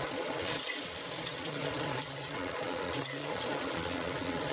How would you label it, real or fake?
fake